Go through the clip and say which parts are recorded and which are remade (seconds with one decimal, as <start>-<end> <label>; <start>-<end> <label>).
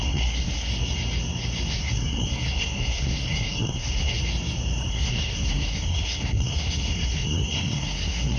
0.0-0.7 remade; 0.7-1.7 recorded; 1.7-4.2 remade; 4.2-4.9 recorded; 4.9-8.4 remade